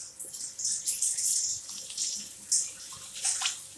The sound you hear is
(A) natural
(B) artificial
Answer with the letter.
A